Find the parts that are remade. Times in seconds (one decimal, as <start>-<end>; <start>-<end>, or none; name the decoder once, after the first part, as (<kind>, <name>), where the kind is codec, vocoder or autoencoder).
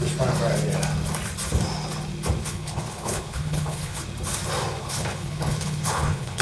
2.4-4.0 (codec, HILCodec); 4.8-6.4